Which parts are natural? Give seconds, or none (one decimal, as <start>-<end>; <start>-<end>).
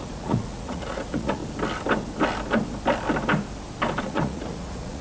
1.4-4.0